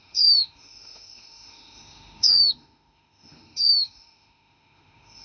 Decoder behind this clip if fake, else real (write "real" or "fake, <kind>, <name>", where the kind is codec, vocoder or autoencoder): fake, autoencoder, DAC-VAE